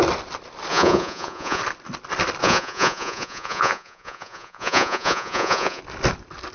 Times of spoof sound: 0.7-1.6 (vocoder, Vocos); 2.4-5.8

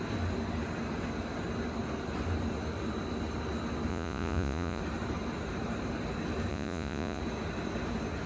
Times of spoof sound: 3.9-4.8 (vocoder, Vocos); 6.5-7.2

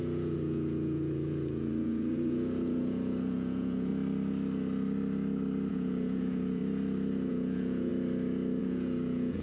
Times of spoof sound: 0.0-3.9 (vocoder, Vocos); 5.7-6.6; 7.3-7.9; 8.6-9.4

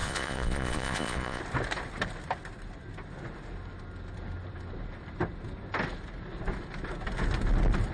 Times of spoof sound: 0.0-1.4 (vocoder, Vocos)

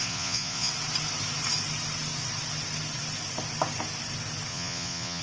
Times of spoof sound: 0.0-0.7 (vocoder, Vocos); 4.5-5.2